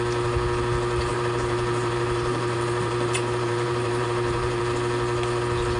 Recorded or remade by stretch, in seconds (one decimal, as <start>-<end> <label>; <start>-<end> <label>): 0.0-1.1 recorded; 1.1-4.6 remade; 4.6-5.8 recorded